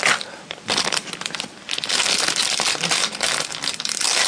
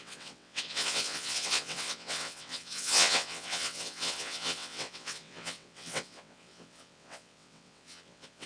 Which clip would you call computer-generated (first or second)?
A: second